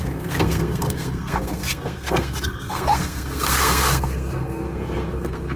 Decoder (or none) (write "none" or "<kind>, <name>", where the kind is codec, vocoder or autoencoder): codec, SNAC